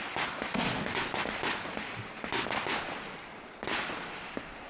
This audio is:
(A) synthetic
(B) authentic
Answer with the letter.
B